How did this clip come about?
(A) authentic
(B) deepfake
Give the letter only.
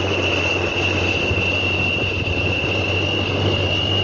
A